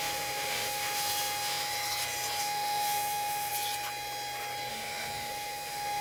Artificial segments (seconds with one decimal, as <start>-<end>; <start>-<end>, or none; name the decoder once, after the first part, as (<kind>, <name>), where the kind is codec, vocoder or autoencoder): 0.0-1.7 (autoencoder, DAC-VAE); 2.4-3.5; 4.7-6.0